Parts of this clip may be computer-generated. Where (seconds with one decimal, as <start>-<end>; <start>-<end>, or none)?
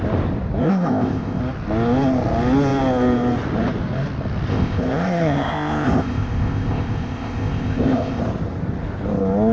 0.6-1.4; 4.5-8.2